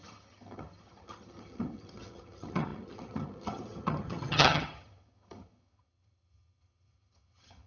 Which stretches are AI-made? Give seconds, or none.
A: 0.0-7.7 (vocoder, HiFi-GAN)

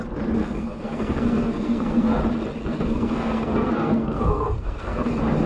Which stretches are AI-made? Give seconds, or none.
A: 0.4-2.2 (codec, SNAC); 2.6-5.1

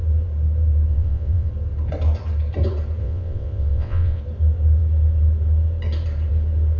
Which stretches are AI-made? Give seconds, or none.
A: 0.9-1.5 (vocoder, WaveNeXt); 3.0-4.2

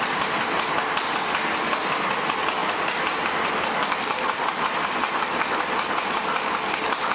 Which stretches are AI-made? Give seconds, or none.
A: none

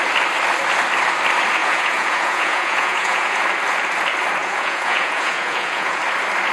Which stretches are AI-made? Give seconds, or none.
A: 1.6-3.4 (vocoder, Vocos); 4.4-6.0

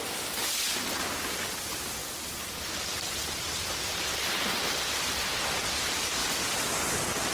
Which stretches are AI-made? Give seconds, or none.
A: none

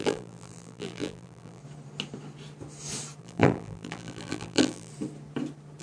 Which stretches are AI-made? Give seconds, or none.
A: 0.0-1.6 (vocoder, BigVGAN v2); 3.2-4.9

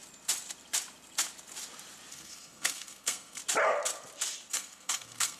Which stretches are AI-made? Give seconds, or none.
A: 2.1-3.4 (codec, SNAC); 4.5-5.4